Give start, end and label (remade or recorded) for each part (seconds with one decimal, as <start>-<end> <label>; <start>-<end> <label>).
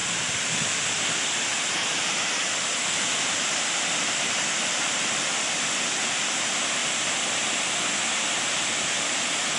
0.0-0.7 remade; 0.7-1.5 recorded; 1.5-5.2 remade; 5.2-9.6 recorded